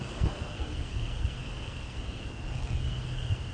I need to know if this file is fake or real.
fake